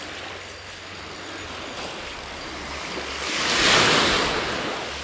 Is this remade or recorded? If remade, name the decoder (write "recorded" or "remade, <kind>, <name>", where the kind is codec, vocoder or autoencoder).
recorded